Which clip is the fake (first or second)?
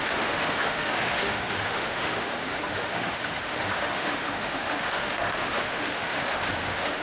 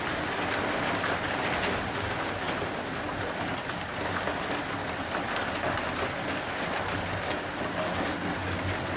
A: first